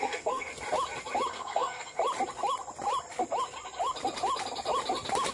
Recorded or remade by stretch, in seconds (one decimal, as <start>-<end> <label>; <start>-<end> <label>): 0.0-0.5 remade; 0.5-1.3 recorded; 1.3-2.0 remade; 2.0-5.3 recorded